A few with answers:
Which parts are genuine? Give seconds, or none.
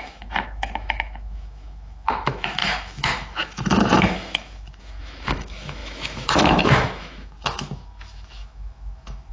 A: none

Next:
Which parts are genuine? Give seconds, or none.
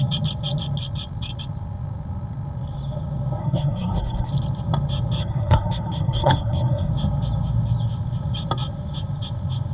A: 0.0-3.4; 4.3-5.2; 6.9-9.7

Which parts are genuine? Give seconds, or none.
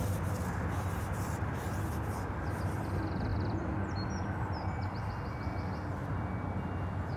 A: 0.0-7.2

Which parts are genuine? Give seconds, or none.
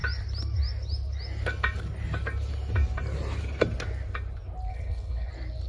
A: 0.0-4.7; 5.3-5.7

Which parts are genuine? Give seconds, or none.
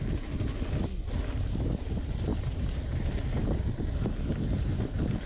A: 0.0-5.3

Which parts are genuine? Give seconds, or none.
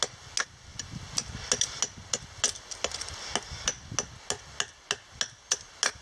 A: 0.0-6.0